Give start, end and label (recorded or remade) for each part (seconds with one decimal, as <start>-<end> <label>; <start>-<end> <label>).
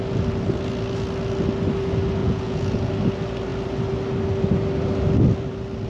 0.0-2.2 recorded; 2.2-2.9 remade; 2.9-5.9 recorded